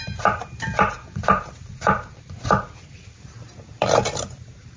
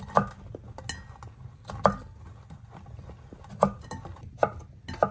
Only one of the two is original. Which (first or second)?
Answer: second